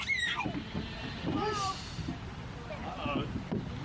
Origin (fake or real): real